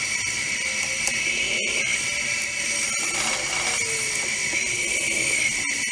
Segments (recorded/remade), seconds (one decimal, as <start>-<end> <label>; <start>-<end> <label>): 0.0-5.9 recorded

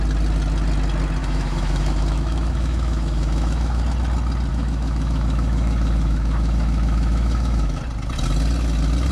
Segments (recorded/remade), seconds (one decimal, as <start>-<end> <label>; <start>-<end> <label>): 0.0-1.2 recorded; 1.2-3.8 remade; 3.8-4.5 recorded; 4.5-7.8 remade; 7.8-9.1 recorded

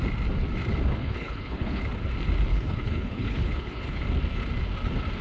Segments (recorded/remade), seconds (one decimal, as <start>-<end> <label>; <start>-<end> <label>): 0.0-1.0 recorded; 1.0-1.8 remade; 1.8-2.5 recorded; 2.5-4.0 remade; 4.0-5.2 recorded